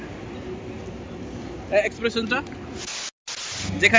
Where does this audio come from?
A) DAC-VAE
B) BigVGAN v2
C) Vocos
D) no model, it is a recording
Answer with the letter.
D